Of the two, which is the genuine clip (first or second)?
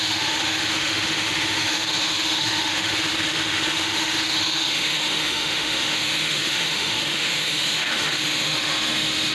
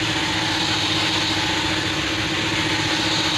second